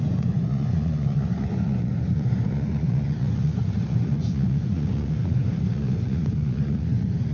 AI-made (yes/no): yes